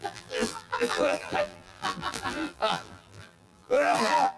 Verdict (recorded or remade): remade